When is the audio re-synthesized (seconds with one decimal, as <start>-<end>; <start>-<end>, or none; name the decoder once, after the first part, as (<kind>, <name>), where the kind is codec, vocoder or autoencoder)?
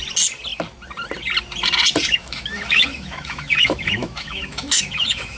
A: 2.2-5.4 (autoencoder, DAC-VAE)